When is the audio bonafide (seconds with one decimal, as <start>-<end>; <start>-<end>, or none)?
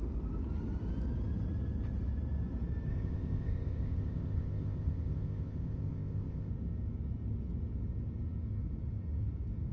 0.0-2.9; 6.5-9.7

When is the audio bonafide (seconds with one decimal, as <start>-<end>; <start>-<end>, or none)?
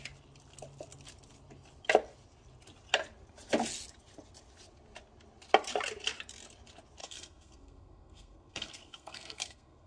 0.0-7.0